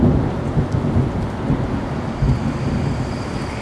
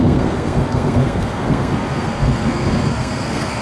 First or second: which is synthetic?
second